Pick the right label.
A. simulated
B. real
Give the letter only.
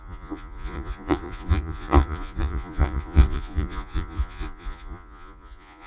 A